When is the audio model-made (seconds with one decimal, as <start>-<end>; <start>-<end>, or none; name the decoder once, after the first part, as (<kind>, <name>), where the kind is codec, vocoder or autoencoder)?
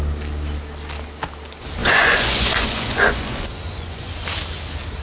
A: 1.8-4.1 (vocoder, Vocos)